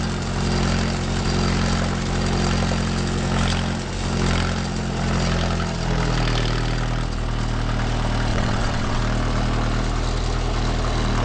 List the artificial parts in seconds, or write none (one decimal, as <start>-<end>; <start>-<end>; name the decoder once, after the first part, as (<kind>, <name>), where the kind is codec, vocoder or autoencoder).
8.3-9.0 (vocoder, WaveNeXt)